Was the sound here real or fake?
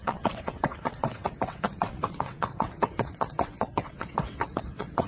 fake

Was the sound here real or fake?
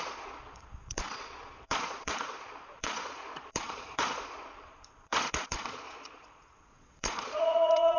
fake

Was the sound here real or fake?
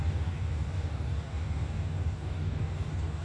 fake